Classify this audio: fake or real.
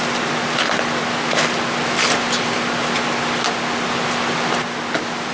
real